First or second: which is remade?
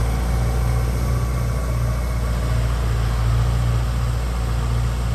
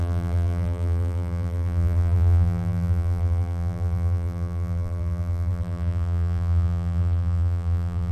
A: second